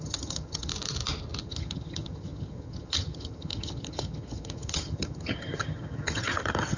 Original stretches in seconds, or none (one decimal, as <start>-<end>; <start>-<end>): 0.7-1.4